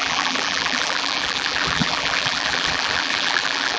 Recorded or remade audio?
remade